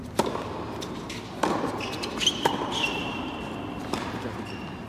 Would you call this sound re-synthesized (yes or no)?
no